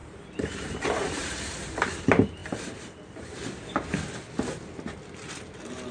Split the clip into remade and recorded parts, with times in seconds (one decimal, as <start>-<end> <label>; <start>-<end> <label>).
0.0-2.0 remade; 2.0-5.9 recorded